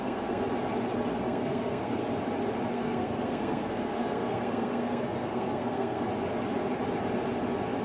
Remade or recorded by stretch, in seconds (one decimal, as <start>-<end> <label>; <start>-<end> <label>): 0.0-0.4 remade; 0.4-1.1 recorded; 1.1-2.0 remade; 2.0-2.7 recorded; 2.7-6.1 remade; 6.1-7.8 recorded